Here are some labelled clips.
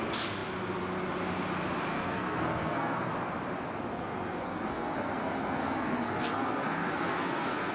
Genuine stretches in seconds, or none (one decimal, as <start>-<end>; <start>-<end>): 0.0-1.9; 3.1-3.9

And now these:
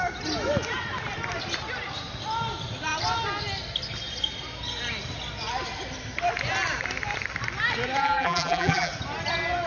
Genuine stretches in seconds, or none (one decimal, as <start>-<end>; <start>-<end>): 0.0-8.0; 8.9-9.7

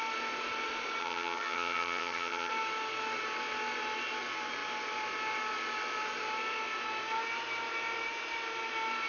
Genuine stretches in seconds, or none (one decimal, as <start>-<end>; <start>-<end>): 0.0-1.0; 2.5-9.1

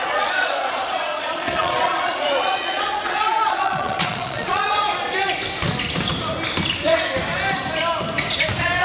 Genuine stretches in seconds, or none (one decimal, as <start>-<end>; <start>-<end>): 4.9-8.8